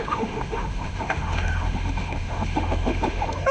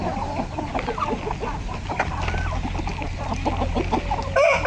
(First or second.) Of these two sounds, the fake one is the first